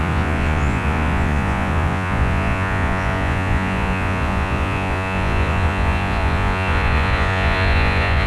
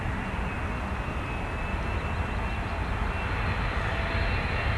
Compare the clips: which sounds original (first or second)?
second